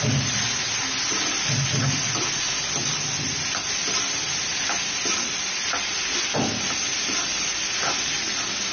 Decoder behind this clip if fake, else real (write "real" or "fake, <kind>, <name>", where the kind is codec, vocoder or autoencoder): real